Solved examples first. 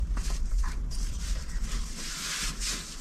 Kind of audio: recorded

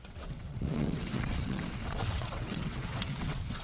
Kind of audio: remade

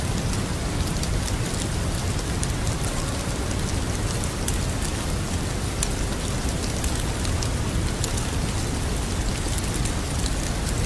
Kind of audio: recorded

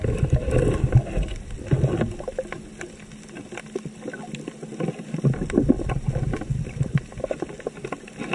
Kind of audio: recorded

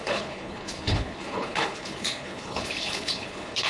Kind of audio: remade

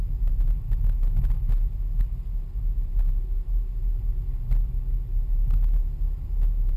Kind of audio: recorded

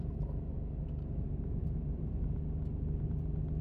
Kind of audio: recorded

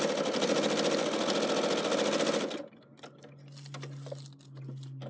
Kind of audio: recorded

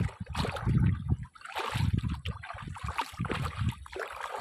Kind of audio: recorded